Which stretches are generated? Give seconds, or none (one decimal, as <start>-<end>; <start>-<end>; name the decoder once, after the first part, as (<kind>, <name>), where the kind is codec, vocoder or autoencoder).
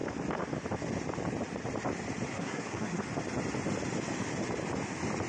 2.3-3.0 (codec, SNAC)